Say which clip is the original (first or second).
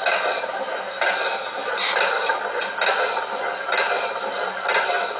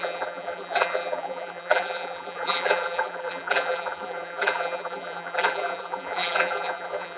first